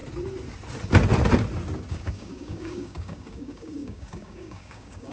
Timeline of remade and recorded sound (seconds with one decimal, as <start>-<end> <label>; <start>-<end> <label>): 0.0-1.9 recorded; 1.9-5.1 remade